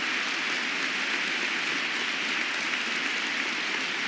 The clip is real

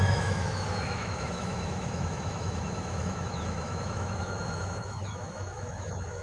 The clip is fake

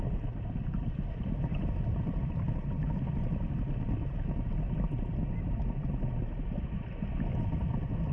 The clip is real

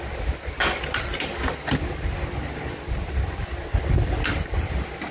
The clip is real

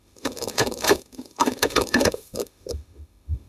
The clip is fake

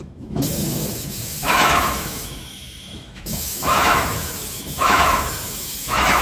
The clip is fake